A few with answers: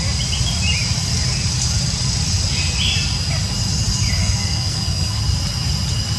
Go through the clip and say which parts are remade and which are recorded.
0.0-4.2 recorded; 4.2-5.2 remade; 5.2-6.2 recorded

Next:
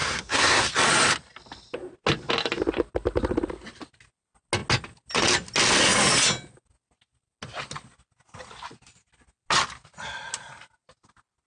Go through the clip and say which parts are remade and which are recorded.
0.0-0.7 remade; 0.7-11.5 recorded

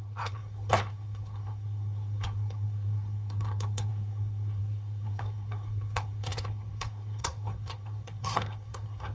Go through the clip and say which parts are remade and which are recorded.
0.0-9.1 remade